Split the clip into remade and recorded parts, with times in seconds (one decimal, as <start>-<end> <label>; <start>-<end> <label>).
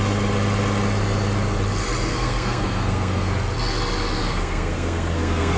0.0-2.1 recorded; 2.1-3.3 remade; 3.3-4.2 recorded; 4.2-5.6 remade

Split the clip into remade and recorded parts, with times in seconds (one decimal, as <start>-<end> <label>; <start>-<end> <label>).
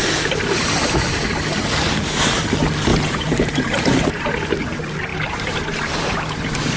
0.0-2.9 recorded; 2.9-4.2 remade; 4.2-5.1 recorded; 5.1-6.1 remade; 6.1-6.8 recorded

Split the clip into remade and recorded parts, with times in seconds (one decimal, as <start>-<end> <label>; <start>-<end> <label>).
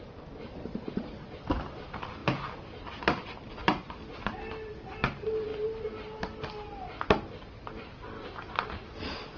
0.0-9.4 recorded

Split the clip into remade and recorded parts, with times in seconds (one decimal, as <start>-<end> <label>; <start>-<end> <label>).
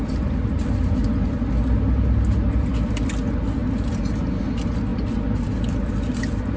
0.0-6.6 recorded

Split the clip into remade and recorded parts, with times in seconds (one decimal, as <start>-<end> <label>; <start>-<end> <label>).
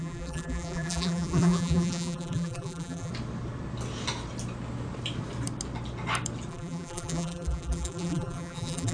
0.0-3.1 remade; 3.1-6.5 recorded; 6.5-8.9 remade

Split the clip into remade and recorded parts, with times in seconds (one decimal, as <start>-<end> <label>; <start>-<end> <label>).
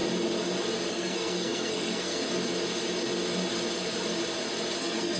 0.0-0.9 recorded; 0.9-2.2 remade; 2.2-4.8 recorded; 4.8-5.2 remade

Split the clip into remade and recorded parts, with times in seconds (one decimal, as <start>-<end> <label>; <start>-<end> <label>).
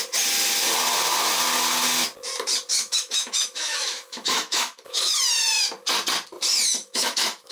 0.0-2.7 recorded; 2.7-5.2 remade; 5.2-6.8 recorded; 6.8-7.5 remade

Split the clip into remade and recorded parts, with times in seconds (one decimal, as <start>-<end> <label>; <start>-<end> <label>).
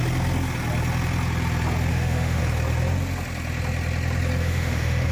0.0-1.9 recorded; 1.9-2.4 remade; 2.4-4.4 recorded; 4.4-5.1 remade